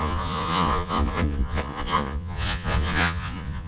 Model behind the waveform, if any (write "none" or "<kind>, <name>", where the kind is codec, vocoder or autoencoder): vocoder, Vocos